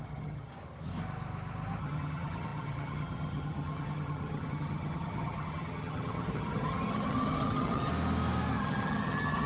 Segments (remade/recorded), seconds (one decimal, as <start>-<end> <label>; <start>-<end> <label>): 0.0-0.5 remade; 0.5-1.8 recorded; 1.8-7.9 remade; 7.9-8.6 recorded; 8.6-9.5 remade